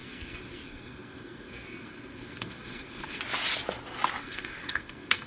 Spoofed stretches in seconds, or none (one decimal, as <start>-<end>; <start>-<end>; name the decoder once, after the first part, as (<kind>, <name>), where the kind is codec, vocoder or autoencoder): 0.0-3.2 (codec, SNAC); 4.2-5.3